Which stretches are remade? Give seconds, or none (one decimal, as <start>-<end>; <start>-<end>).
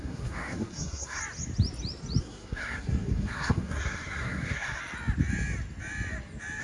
0.0-1.2; 2.2-4.8